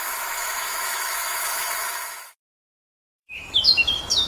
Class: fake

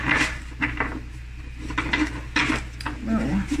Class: real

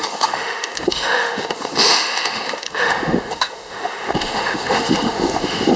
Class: fake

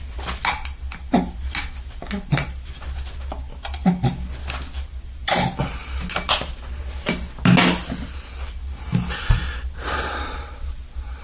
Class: real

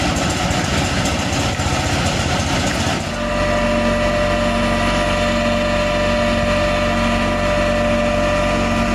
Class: real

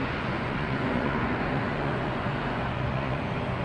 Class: fake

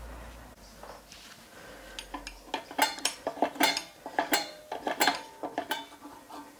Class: real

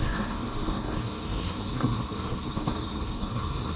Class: fake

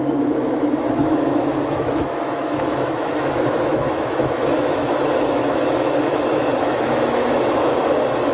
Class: fake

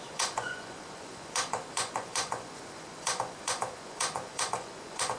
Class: fake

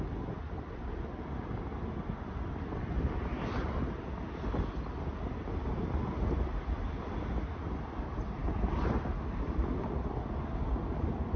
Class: real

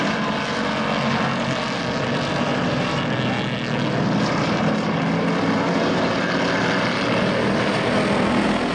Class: real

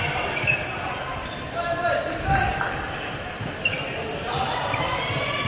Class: fake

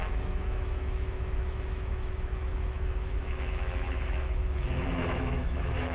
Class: fake